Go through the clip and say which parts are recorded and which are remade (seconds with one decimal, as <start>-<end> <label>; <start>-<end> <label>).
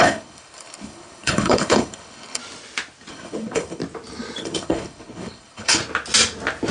0.0-2.4 remade; 2.4-3.1 recorded; 3.1-3.8 remade; 3.8-4.4 recorded; 4.4-5.8 remade; 5.8-6.7 recorded